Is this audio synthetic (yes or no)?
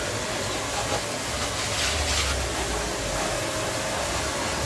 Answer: no